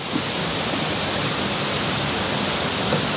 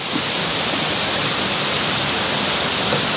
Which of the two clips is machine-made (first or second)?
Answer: second